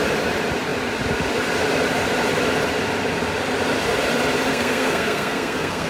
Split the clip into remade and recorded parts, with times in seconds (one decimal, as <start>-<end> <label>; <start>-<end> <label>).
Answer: 0.0-4.5 recorded; 4.5-5.9 remade